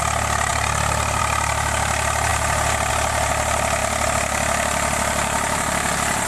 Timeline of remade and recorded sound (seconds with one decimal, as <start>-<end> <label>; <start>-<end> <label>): 0.0-6.3 recorded